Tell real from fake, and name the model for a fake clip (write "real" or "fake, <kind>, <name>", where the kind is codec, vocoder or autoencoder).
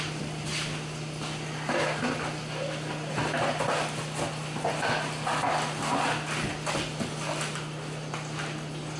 real